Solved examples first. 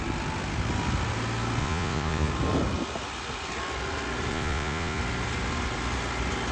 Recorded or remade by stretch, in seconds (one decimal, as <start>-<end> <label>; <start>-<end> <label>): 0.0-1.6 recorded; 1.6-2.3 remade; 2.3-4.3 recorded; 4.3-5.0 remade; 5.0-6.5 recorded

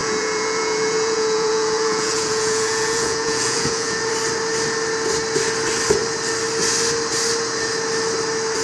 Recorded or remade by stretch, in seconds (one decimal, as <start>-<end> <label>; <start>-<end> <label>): 0.0-4.1 remade; 4.1-8.6 recorded

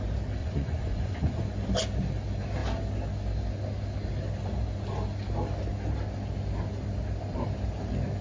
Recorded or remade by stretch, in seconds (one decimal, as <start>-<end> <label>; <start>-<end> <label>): 0.0-0.4 recorded; 0.4-1.4 remade; 1.4-8.2 recorded

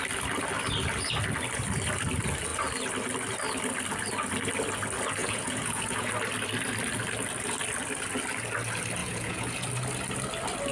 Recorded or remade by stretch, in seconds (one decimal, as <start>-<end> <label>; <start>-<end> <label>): 0.0-5.2 recorded; 5.2-6.1 remade; 6.1-9.0 recorded; 9.0-9.7 remade; 9.7-10.7 recorded